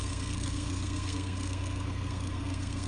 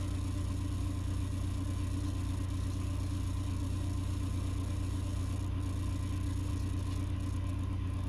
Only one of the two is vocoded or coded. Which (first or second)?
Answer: first